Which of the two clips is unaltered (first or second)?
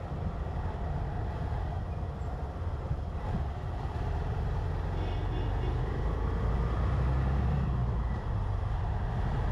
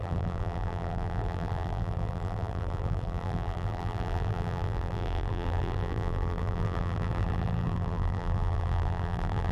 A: first